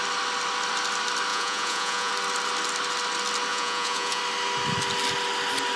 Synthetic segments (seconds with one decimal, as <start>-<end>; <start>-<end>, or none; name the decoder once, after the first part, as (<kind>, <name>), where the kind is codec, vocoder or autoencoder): 1.3-2.1 (vocoder, Vocos); 3.5-4.2